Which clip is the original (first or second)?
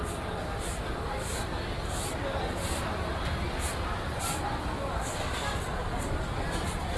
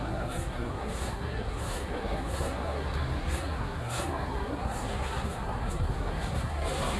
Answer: first